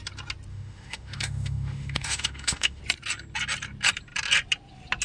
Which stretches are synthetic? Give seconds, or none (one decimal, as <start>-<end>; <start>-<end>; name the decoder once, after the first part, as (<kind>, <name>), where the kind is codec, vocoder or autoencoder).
0.5-2.8 (autoencoder, DAC-VAE)